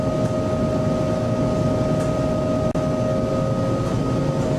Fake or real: real